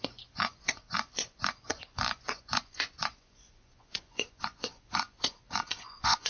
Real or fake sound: fake